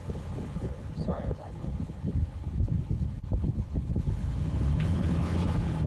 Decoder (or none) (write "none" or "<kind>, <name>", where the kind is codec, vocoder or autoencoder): codec, HILCodec